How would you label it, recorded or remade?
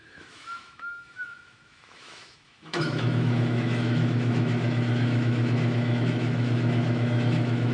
remade